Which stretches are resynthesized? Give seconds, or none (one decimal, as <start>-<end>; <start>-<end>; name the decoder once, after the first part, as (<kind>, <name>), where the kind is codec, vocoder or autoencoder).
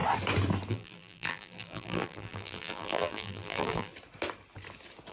0.7-3.9 (vocoder, BigVGAN v2)